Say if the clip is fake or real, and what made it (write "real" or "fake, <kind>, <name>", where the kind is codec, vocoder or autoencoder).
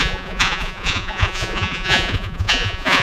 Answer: fake, vocoder, Vocos